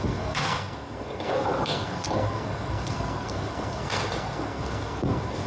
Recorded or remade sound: remade